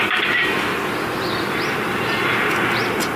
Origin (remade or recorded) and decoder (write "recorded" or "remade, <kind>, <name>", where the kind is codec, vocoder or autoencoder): recorded